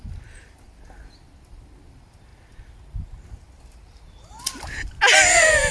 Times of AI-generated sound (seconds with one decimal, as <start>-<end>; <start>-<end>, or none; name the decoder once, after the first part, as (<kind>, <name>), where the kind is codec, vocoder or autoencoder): none